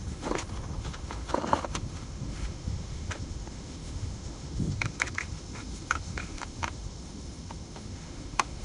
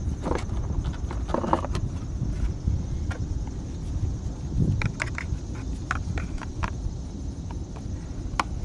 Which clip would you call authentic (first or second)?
second